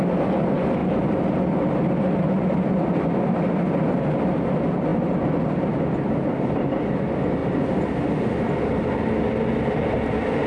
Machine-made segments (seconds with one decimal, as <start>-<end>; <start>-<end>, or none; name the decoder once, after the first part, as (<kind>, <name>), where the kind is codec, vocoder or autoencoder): none